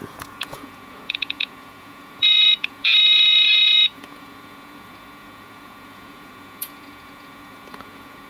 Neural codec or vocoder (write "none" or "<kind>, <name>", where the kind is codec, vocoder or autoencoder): vocoder, Vocos